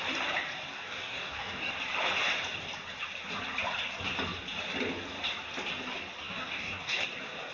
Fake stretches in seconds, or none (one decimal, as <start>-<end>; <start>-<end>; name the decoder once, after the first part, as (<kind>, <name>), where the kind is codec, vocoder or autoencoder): 0.7-1.7 (codec, DAC); 6.2-7.0